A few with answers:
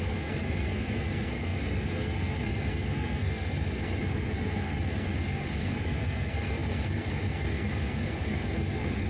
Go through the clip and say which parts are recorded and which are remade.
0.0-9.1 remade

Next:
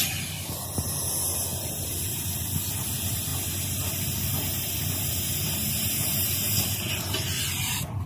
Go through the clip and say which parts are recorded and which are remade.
0.0-1.5 recorded; 1.5-2.7 remade; 2.7-8.1 recorded

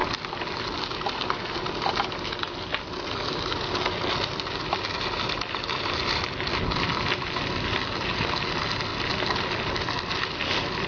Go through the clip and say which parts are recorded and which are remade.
0.0-10.9 recorded

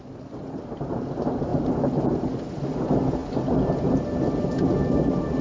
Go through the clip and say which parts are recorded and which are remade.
0.0-5.4 recorded